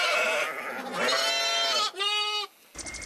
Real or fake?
real